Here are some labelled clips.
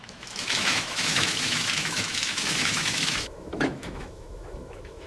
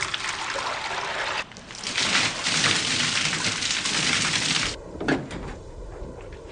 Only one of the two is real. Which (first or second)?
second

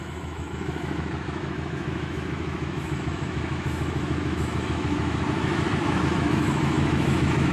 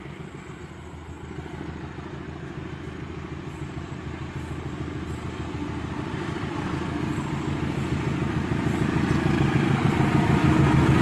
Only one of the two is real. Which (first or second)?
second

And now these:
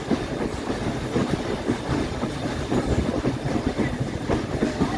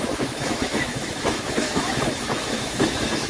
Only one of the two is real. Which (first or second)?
first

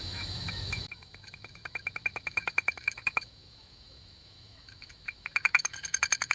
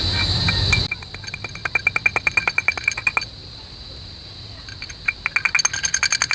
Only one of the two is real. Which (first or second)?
second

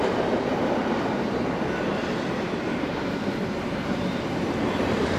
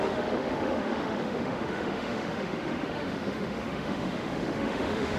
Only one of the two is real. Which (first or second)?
first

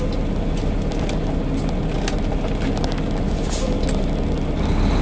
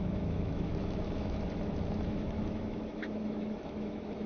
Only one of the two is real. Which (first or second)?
first